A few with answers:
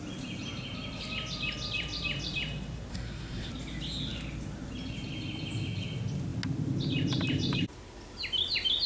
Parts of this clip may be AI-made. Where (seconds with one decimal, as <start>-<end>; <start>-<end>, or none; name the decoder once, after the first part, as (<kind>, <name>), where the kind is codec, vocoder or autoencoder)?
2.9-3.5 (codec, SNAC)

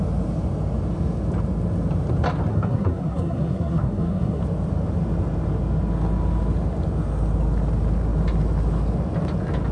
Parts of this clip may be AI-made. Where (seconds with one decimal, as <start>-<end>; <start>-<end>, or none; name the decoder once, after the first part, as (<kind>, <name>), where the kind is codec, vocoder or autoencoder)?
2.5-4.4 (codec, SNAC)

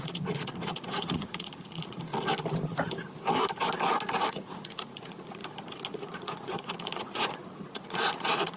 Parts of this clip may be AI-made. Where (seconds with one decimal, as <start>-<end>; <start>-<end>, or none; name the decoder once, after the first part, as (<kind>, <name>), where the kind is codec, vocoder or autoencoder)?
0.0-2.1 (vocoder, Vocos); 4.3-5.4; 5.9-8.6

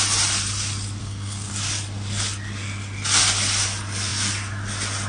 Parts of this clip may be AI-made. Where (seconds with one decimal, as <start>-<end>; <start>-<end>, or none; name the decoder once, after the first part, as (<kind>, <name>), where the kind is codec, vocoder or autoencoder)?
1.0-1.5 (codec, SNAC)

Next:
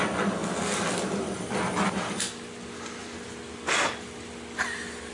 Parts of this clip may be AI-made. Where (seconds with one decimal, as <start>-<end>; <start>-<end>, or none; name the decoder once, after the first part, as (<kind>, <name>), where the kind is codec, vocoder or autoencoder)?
none